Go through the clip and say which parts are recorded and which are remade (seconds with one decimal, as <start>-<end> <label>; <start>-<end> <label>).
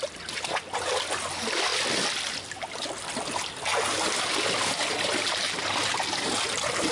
0.0-6.9 recorded